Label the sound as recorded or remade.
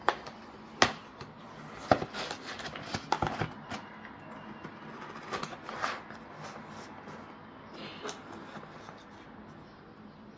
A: recorded